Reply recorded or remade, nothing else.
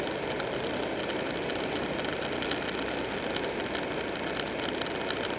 recorded